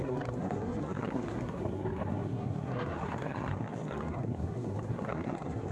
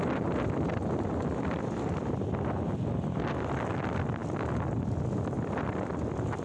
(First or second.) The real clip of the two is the second